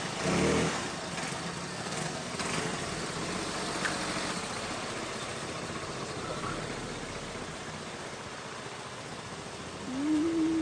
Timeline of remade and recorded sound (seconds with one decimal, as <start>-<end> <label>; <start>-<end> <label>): 0.0-1.7 recorded; 1.7-2.3 remade; 2.3-10.6 recorded